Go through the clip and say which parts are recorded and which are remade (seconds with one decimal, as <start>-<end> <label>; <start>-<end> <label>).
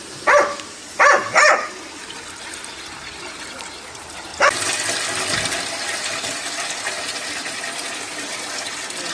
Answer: 0.0-9.1 recorded